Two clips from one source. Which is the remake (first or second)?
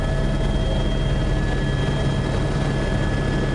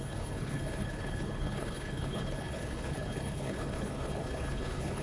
second